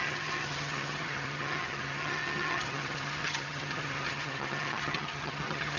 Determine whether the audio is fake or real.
fake